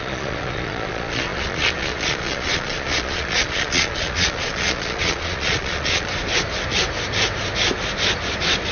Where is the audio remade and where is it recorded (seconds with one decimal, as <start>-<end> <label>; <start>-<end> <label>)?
0.0-6.1 remade; 6.1-8.7 recorded